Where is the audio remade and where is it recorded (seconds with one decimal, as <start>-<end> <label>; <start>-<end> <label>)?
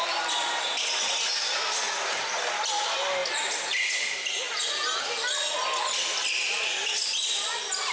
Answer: 0.0-7.9 recorded